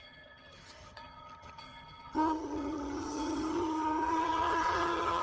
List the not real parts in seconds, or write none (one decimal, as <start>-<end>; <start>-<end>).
0.0-5.2